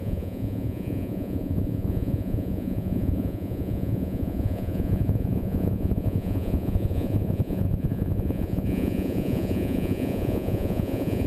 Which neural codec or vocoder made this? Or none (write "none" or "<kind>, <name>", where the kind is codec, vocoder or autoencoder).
vocoder, Vocos